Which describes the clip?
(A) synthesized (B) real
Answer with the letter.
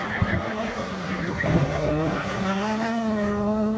A